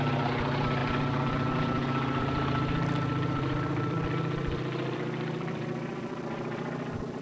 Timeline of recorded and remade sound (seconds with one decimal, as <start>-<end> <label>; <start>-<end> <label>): 0.0-7.2 remade

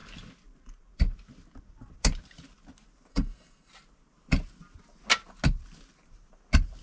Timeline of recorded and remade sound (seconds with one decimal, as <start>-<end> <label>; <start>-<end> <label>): 0.0-3.1 recorded; 3.1-3.7 remade; 3.7-6.8 recorded

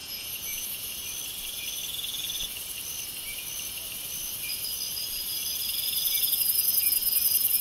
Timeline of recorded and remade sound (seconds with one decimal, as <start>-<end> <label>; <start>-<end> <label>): 0.0-0.9 remade; 0.9-7.6 recorded

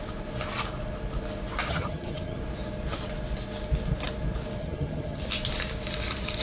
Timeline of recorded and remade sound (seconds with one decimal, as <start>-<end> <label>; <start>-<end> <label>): 0.0-1.7 recorded; 1.7-2.4 remade; 2.4-4.6 recorded; 4.6-5.2 remade; 5.2-6.4 recorded

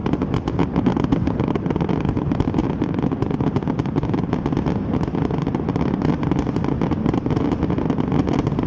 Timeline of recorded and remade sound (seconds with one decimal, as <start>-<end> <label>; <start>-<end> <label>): 0.0-0.9 recorded; 0.9-2.6 remade; 2.6-5.5 recorded; 5.5-8.7 remade

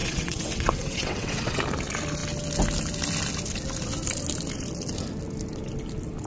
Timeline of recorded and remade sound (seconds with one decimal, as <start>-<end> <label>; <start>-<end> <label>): 0.0-1.6 remade; 1.6-6.3 recorded